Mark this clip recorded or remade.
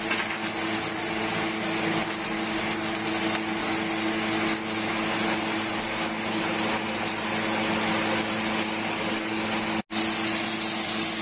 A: recorded